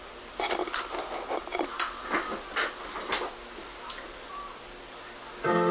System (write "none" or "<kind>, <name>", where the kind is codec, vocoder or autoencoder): none